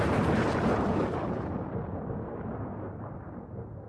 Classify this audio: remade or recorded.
recorded